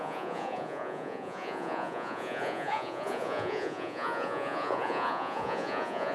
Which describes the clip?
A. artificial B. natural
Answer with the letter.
A